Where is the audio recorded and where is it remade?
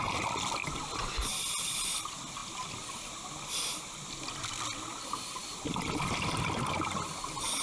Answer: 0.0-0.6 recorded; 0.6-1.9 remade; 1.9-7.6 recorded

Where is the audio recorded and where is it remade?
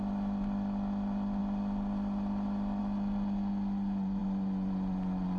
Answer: 0.0-4.2 recorded; 4.2-5.4 remade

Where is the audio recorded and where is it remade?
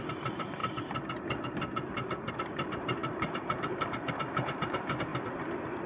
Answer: 0.0-0.6 remade; 0.6-2.3 recorded; 2.3-5.1 remade; 5.1-5.9 recorded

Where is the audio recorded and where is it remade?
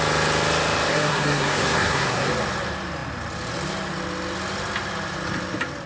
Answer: 0.0-0.9 recorded; 0.9-2.3 remade; 2.3-5.9 recorded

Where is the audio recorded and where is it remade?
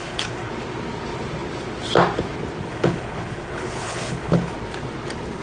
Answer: 0.0-0.5 remade; 0.5-2.7 recorded; 2.7-4.5 remade; 4.5-5.4 recorded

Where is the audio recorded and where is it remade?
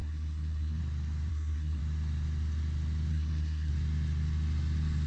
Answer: 0.0-0.8 remade; 0.8-1.3 recorded; 1.3-1.8 remade; 1.8-3.1 recorded; 3.1-3.7 remade; 3.7-5.1 recorded